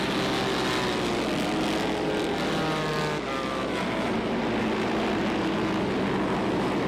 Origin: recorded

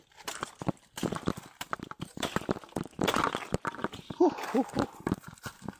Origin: recorded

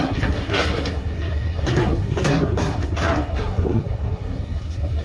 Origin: remade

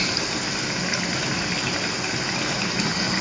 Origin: recorded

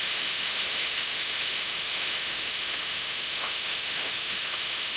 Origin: remade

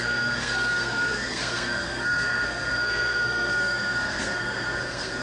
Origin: remade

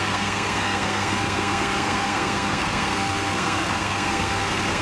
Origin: remade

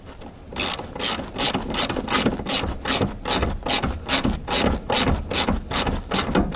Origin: recorded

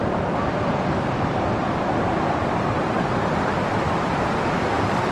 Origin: recorded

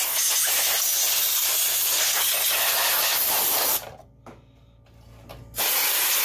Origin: recorded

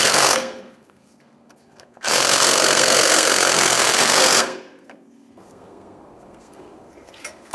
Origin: remade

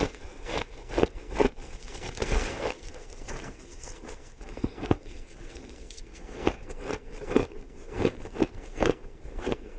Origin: remade